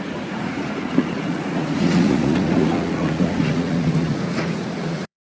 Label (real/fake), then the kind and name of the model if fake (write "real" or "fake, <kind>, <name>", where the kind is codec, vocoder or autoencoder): fake, vocoder, Vocos